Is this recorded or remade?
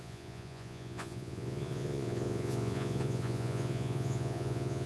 remade